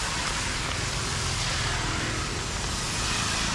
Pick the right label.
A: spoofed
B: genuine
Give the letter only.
B